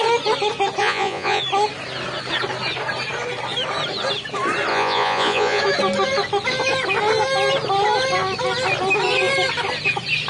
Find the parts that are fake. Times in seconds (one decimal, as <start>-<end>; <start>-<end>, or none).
0.8-1.4; 4.7-5.6